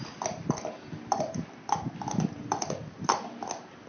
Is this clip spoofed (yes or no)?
no